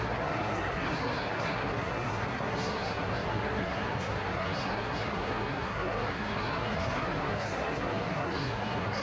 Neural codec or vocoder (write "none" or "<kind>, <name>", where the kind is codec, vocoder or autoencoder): codec, SNAC